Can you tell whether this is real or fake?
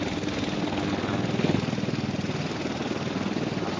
real